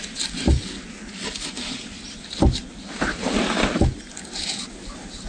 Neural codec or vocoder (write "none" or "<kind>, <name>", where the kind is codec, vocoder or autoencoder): none